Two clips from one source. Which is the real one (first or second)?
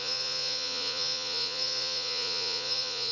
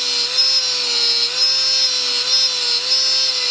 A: second